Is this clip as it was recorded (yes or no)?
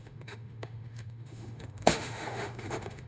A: no